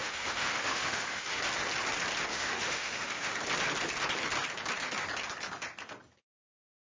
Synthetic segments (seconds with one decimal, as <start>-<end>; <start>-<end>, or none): 0.0-1.4; 2.3-3.4